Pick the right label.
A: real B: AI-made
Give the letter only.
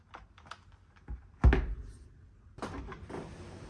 A